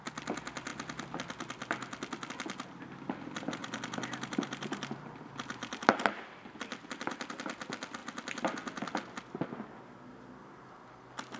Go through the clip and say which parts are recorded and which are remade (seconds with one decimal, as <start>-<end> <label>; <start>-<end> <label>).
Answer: 0.0-3.6 recorded; 3.6-7.3 remade; 7.3-11.4 recorded